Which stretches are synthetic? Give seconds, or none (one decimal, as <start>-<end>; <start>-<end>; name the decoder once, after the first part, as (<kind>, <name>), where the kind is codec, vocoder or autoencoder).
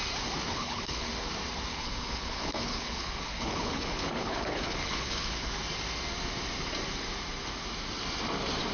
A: 0.5-1.1 (codec, HILCodec); 1.7-5.5